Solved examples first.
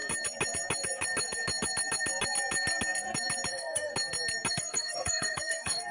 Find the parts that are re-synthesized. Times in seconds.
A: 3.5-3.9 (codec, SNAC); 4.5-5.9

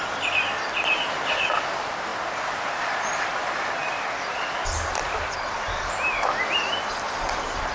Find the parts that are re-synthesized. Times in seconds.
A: none

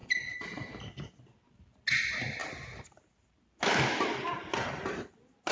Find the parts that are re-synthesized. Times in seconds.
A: none